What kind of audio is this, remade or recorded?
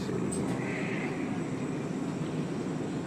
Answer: recorded